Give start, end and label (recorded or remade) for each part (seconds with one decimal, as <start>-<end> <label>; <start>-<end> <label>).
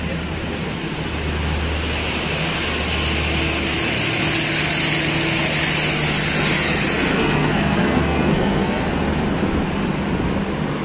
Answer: 0.0-7.1 recorded; 7.1-8.8 remade; 8.8-10.8 recorded